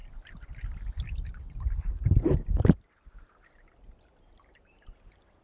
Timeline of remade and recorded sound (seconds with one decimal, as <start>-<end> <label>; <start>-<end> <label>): 0.0-5.4 recorded